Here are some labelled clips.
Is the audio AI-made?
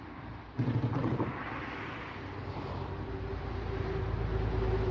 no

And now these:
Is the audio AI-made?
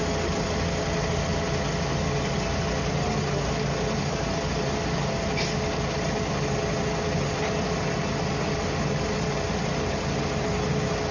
no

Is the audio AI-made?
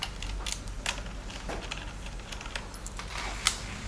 no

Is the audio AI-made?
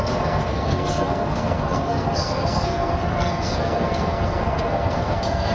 yes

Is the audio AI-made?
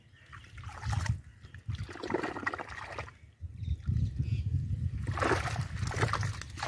no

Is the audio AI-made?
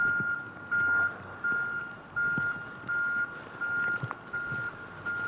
no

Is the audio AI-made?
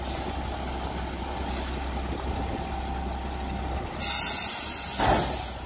no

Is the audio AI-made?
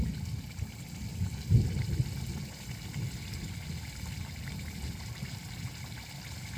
no